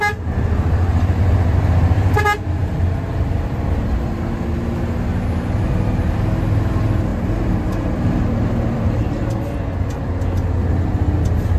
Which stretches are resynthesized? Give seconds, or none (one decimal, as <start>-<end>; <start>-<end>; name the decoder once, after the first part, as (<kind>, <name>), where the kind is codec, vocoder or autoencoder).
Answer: 7.1-9.3 (vocoder, BigVGAN v2)